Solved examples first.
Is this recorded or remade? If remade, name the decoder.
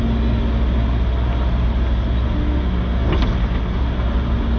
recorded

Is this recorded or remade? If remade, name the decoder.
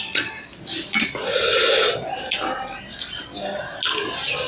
recorded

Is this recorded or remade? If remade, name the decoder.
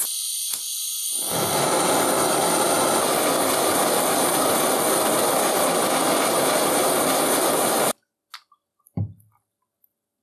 recorded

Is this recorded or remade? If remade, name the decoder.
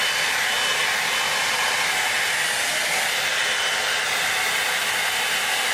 recorded